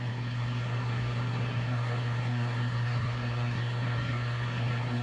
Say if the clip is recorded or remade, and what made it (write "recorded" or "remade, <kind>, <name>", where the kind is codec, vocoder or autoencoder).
remade, codec, SNAC